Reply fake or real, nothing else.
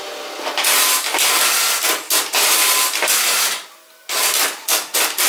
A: real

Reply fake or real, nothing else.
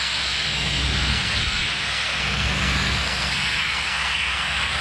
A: fake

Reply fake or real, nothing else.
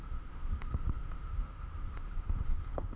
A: fake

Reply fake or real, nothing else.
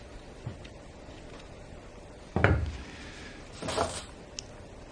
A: real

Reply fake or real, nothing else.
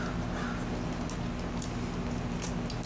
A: real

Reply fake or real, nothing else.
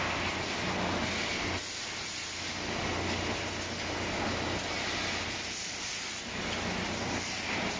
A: real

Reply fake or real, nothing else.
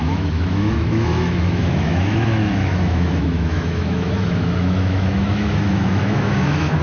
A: fake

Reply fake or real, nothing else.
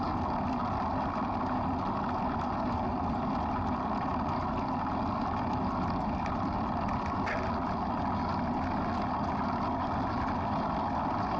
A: real